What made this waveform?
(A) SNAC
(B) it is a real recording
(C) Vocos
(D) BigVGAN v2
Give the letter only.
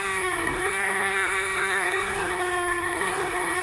A